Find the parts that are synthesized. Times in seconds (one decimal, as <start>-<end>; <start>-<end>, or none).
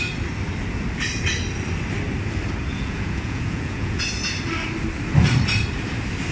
2.7-4.0